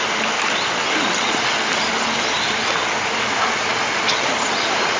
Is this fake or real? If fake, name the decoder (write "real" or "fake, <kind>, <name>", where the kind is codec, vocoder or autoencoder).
real